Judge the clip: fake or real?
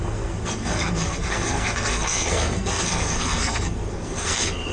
fake